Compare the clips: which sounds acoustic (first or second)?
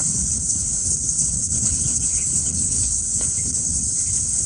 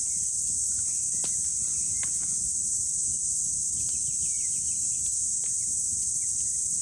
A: second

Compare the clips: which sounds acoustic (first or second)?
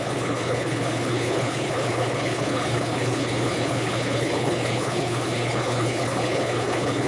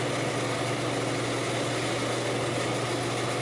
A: second